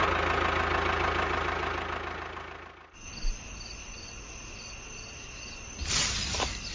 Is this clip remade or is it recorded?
recorded